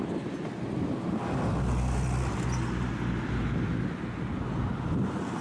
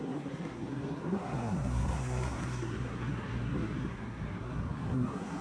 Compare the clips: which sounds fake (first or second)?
second